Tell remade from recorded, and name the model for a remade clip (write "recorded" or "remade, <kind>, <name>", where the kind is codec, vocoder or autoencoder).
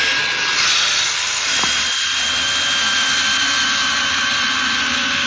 recorded